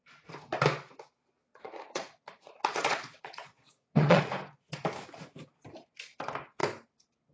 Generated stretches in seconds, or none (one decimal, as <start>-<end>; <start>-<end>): 1.5-4.2